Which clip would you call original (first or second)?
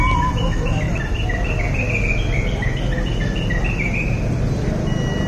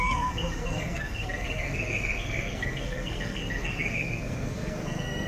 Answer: first